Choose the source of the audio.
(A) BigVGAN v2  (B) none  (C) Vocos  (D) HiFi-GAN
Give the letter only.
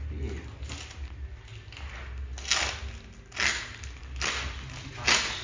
B